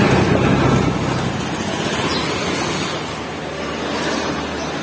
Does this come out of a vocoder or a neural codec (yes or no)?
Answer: no